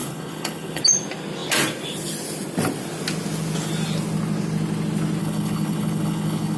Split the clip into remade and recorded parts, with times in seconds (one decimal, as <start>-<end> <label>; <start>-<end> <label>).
0.0-0.8 remade; 0.8-5.2 recorded; 5.2-6.6 remade